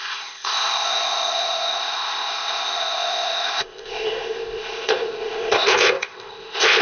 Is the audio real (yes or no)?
no